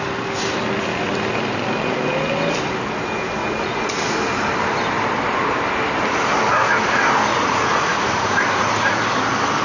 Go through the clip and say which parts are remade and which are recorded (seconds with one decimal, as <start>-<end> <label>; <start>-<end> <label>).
0.0-3.4 recorded; 3.4-4.0 remade; 4.0-7.3 recorded; 7.3-9.0 remade; 9.0-9.6 recorded